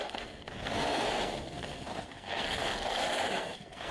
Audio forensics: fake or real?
fake